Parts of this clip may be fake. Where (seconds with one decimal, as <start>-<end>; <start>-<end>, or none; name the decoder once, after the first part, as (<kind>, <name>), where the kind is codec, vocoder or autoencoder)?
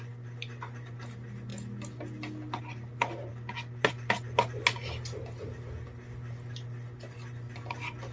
none